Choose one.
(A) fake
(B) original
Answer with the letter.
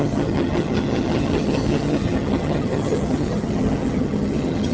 A